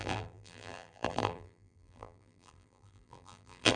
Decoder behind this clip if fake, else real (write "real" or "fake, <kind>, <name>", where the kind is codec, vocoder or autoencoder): fake, vocoder, BigVGAN v2